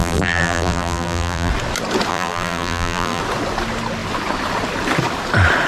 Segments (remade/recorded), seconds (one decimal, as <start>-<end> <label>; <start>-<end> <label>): 0.0-1.5 remade; 1.5-2.1 recorded; 2.1-3.2 remade; 3.2-5.7 recorded